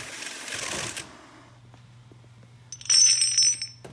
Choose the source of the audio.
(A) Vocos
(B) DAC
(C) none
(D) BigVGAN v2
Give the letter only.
C